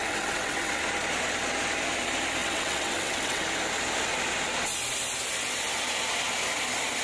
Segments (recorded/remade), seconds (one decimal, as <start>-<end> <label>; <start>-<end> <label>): 0.0-0.8 remade; 0.8-2.4 recorded; 2.4-3.4 remade; 3.4-7.0 recorded

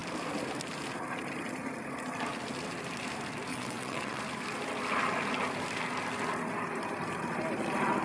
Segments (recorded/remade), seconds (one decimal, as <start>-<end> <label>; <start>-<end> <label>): 0.0-3.5 recorded; 3.5-4.2 remade; 4.2-8.0 recorded

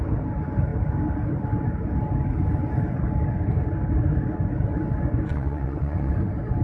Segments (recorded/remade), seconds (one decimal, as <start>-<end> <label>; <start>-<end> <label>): 0.0-5.3 recorded; 5.3-6.1 remade; 6.1-6.6 recorded